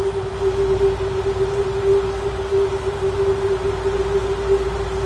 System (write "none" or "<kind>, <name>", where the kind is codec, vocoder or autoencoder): none